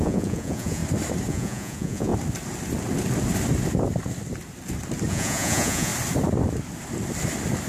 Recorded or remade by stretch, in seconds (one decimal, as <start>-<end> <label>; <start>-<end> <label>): 0.0-0.8 remade; 0.8-1.3 recorded; 1.3-2.1 remade; 2.1-5.1 recorded; 5.1-5.9 remade; 5.9-7.7 recorded